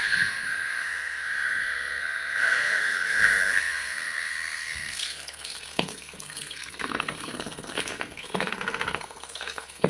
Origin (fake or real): fake